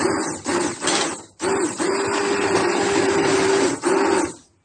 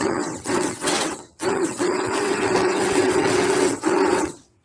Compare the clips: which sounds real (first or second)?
first